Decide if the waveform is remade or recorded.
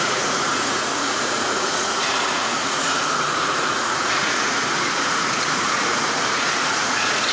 remade